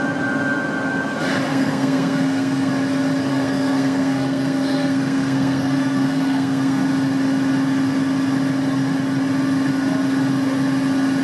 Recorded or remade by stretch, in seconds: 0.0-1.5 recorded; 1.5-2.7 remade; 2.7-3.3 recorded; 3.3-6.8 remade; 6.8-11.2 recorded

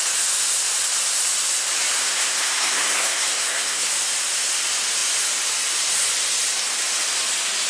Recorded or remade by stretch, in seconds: 0.0-2.0 recorded; 2.0-3.9 remade; 3.9-7.7 recorded